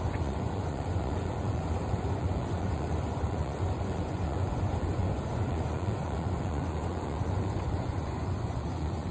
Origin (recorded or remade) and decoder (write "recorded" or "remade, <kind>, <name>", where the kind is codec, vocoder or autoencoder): remade, vocoder, Vocos